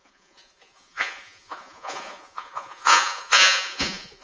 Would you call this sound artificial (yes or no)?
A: yes